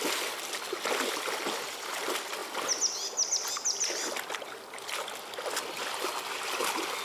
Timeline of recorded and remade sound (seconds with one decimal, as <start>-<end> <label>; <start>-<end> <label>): 0.0-7.0 recorded